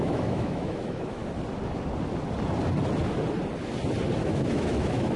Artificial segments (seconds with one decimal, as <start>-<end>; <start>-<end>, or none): 0.0-1.2; 4.2-5.2